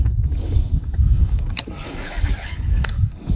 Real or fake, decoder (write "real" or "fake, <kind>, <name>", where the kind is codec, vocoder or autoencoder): fake, codec, DAC